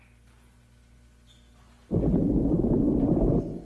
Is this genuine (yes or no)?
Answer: yes